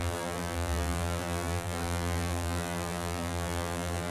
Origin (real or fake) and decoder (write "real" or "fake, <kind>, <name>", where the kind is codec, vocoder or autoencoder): fake, vocoder, BigVGAN v2